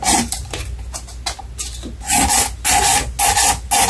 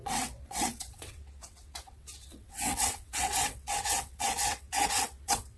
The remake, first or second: second